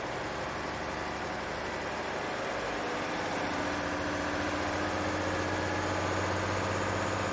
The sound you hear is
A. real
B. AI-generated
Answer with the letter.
A